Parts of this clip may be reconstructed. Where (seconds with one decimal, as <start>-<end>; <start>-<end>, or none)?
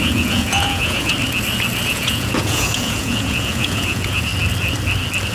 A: 0.0-1.1; 1.9-4.3